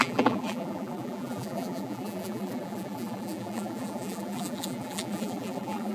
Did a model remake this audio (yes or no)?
yes